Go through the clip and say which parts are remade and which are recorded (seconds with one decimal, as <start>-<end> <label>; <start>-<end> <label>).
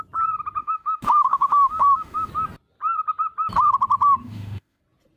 0.0-0.6 recorded; 0.6-2.3 remade; 2.3-4.2 recorded; 4.2-4.8 remade; 4.8-5.2 recorded